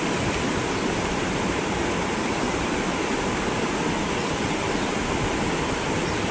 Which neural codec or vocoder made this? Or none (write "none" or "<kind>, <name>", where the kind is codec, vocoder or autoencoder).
none